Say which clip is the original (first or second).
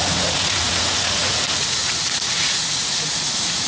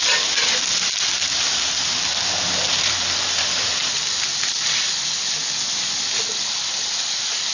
second